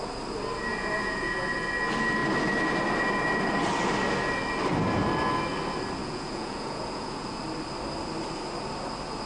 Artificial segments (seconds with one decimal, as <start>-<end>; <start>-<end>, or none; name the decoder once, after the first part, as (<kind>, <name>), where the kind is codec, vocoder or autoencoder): 0.7-1.3 (vocoder, Vocos); 6.0-7.4